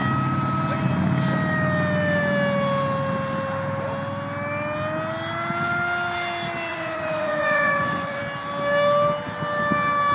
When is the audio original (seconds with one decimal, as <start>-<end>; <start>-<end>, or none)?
0.0-6.7; 8.2-10.1